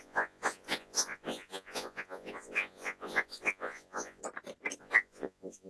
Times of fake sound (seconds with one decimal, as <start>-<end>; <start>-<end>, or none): 0.0-4.2; 4.8-5.7